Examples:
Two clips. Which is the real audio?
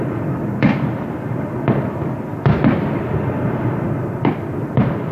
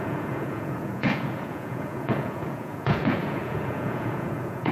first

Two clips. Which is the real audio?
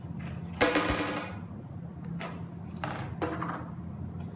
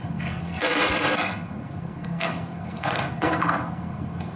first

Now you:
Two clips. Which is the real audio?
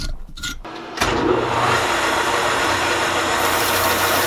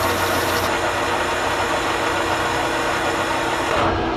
second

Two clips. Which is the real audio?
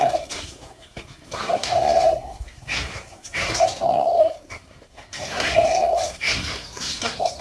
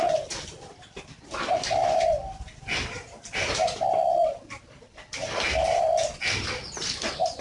second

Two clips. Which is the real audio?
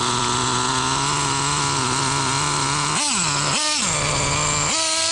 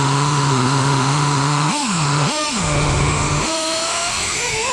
first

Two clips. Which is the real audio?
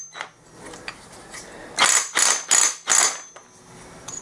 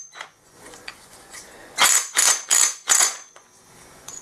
first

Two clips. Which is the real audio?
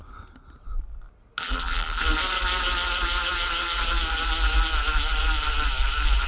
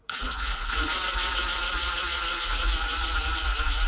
first